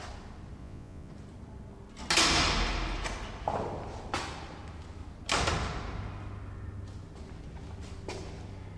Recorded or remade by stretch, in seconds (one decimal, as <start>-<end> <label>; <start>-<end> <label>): 0.0-0.6 recorded; 0.6-1.1 remade; 1.1-8.8 recorded